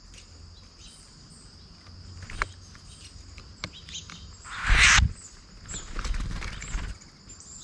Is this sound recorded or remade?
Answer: recorded